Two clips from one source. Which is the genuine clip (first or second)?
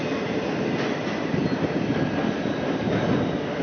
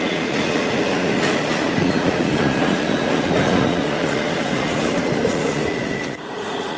first